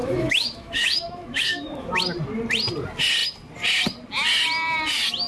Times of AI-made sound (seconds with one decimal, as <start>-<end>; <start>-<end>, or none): 0.0-2.0